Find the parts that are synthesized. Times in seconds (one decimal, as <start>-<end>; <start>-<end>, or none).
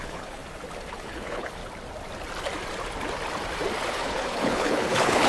0.0-0.4; 0.9-1.6; 3.9-5.3